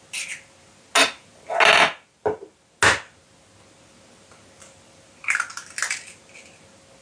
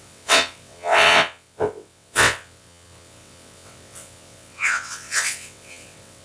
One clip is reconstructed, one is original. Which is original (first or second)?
first